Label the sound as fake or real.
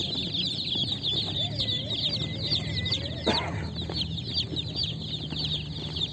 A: fake